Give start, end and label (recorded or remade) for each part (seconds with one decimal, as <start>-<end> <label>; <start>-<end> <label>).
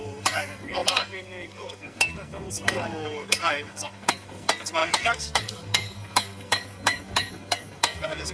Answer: 0.0-8.3 remade